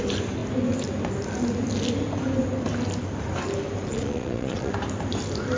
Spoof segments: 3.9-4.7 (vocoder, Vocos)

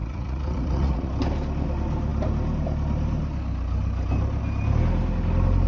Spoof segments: 0.0-1.1 (vocoder, Vocos)

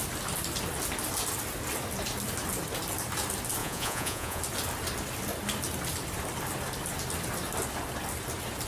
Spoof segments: 3.6-4.4 (vocoder, Vocos)

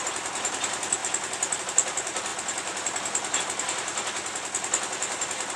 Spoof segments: none

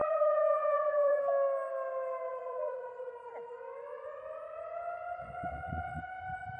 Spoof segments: 0.0-1.2 (vocoder, Vocos); 2.3-3.1; 5.2-6.0

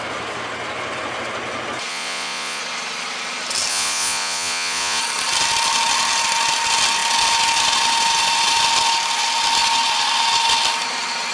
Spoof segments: 1.9-2.6 (vocoder, Vocos); 3.7-5.0

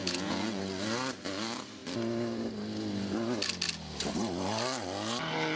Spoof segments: 0.0-0.6 (vocoder, Vocos)

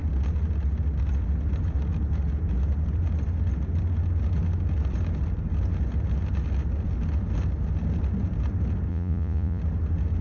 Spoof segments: 8.9-9.6 (vocoder, Vocos)